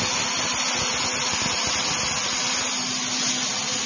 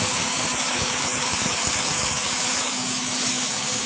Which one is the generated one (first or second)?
second